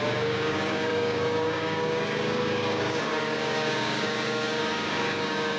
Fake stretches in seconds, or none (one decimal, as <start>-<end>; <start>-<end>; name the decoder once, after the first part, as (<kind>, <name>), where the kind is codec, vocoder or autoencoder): 0.0-5.6 (codec, DAC)